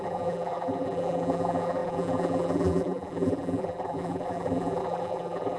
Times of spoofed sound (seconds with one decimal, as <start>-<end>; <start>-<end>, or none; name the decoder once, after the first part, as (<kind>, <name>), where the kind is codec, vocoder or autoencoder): 0.0-5.6 (vocoder, BigVGAN v2)

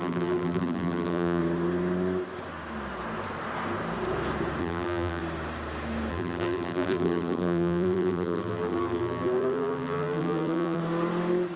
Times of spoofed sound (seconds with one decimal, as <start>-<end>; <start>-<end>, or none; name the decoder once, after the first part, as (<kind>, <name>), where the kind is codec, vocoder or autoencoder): 0.0-1.4 (vocoder, BigVGAN v2); 4.6-5.2; 6.1-10.8

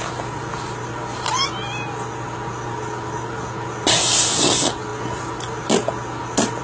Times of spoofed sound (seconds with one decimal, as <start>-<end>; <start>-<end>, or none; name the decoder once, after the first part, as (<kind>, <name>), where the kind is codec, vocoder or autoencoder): none

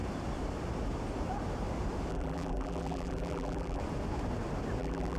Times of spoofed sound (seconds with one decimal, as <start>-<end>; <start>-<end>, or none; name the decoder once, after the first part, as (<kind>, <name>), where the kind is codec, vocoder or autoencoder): 2.1-3.8 (vocoder, BigVGAN v2); 4.8-5.2

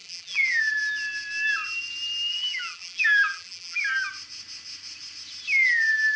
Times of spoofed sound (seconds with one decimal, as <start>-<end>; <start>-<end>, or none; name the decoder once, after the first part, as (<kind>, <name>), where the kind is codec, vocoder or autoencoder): 0.0-0.6 (vocoder, BigVGAN v2); 2.3-3.8

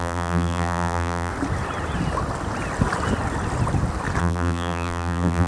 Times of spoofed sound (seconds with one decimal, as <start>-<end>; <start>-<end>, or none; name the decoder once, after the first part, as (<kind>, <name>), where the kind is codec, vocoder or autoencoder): 0.0-1.3 (vocoder, BigVGAN v2); 4.2-5.5

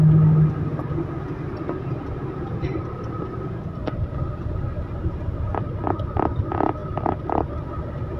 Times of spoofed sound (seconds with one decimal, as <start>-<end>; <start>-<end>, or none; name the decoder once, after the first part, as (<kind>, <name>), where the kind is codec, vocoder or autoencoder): none